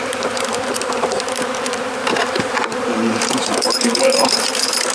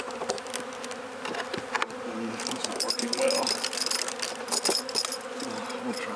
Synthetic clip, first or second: first